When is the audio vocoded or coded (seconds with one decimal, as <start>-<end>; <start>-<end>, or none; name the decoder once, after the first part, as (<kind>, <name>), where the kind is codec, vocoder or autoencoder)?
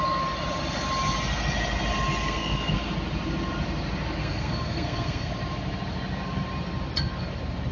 2.2-2.9 (codec, SNAC); 4.2-5.3